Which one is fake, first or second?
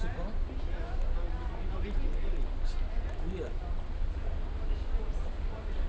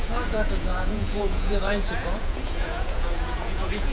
second